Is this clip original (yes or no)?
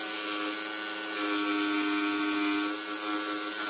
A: yes